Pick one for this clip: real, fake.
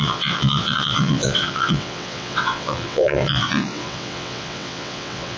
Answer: fake